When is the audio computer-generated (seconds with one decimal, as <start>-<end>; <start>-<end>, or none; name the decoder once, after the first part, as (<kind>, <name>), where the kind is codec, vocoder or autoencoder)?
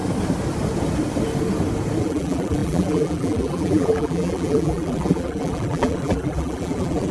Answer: 2.0-7.1 (vocoder, BigVGAN v2)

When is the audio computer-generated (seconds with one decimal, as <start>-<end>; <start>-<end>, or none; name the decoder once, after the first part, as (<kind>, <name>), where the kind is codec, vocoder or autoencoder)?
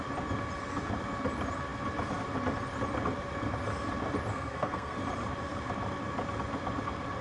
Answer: 4.3-5.0 (codec, SNAC)